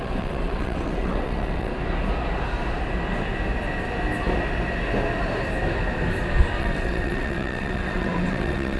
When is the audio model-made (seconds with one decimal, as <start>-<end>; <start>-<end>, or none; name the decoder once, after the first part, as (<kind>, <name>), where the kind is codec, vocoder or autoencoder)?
0.0-1.7 (vocoder, WaveNeXt); 6.6-8.8